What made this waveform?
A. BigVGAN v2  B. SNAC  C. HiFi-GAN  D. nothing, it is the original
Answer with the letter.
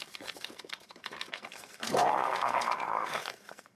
B